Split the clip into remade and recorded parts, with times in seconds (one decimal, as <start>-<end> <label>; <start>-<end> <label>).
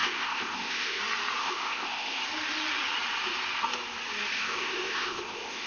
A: 0.0-1.0 remade; 1.0-1.4 recorded; 1.4-2.2 remade; 2.2-4.3 recorded; 4.3-5.7 remade